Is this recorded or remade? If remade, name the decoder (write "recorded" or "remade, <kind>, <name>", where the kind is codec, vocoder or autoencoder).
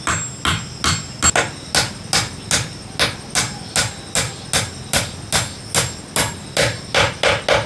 recorded